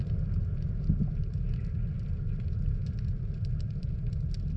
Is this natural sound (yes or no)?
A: yes